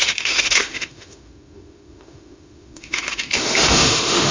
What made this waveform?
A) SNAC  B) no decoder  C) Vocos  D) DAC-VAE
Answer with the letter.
D